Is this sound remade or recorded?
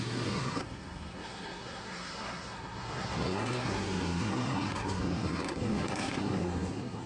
remade